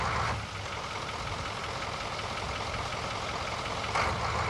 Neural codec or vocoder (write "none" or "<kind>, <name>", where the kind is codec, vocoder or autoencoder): none